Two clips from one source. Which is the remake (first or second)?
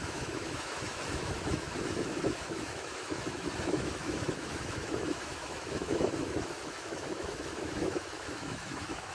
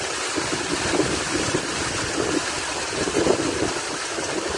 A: first